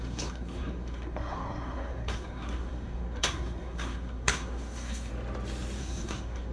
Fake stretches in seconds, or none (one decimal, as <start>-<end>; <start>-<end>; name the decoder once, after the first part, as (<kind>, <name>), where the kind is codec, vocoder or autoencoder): 0.0-5.1 (codec, SNAC); 5.8-6.5